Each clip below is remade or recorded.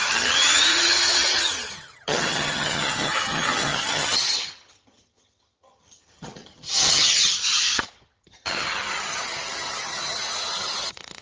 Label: remade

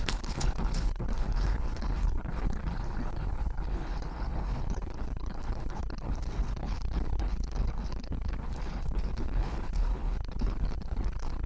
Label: remade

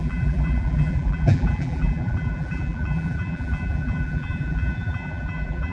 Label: remade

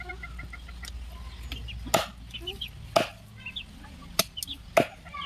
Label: recorded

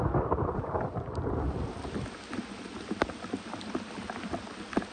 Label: recorded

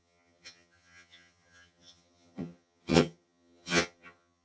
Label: remade